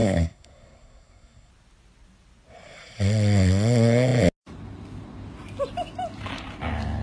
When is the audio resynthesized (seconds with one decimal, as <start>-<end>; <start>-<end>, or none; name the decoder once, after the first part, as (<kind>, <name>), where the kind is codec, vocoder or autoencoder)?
0.0-1.5 (codec, SNAC)